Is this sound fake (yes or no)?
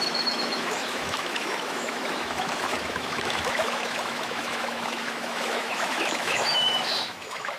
yes